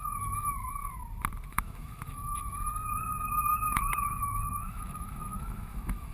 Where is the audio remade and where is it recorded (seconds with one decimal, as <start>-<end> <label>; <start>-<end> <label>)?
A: 0.0-0.8 remade; 0.8-1.5 recorded; 1.5-6.1 remade